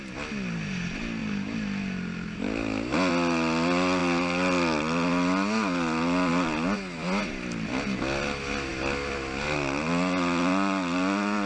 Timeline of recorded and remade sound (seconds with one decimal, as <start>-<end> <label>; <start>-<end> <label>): 0.0-11.5 recorded